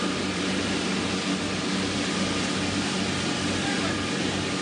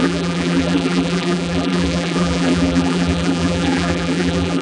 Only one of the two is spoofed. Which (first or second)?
second